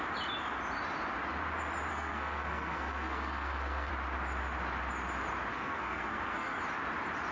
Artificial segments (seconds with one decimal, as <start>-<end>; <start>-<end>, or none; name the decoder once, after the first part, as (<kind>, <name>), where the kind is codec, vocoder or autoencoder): 1.9-3.9 (codec, SNAC); 5.5-6.6